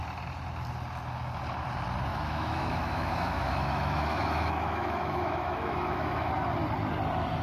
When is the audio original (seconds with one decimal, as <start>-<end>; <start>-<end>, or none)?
0.0-2.1; 6.3-7.4